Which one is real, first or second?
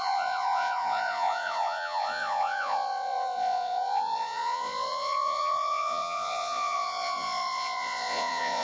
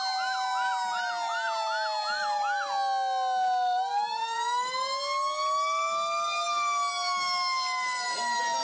second